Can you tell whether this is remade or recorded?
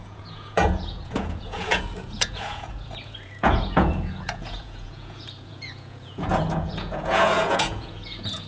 remade